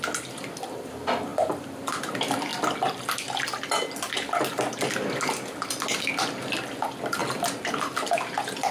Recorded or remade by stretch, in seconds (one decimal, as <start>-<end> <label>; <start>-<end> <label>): 0.0-2.5 remade; 2.5-6.1 recorded; 6.1-8.7 remade